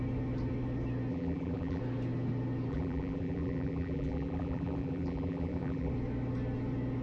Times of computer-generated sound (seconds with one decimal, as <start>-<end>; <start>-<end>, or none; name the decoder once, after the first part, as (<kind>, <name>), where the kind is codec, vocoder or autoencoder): 1.1-1.8 (vocoder, BigVGAN v2); 2.7-5.9